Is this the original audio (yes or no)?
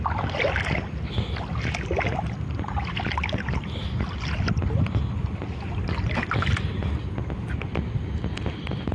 yes